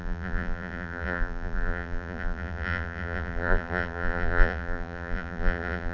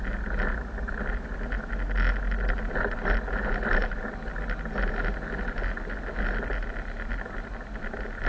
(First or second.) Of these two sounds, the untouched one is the second